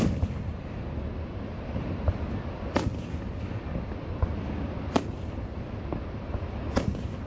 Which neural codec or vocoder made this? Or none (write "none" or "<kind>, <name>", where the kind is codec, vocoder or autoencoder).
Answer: none